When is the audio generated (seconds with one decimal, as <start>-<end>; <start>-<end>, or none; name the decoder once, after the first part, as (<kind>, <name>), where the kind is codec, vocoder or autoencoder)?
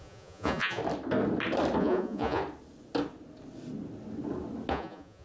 0.0-0.8 (vocoder, Vocos); 1.8-2.4; 4.7-5.2